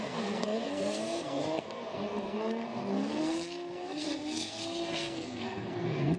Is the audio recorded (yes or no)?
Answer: no